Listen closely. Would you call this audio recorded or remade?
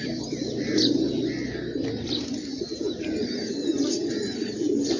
recorded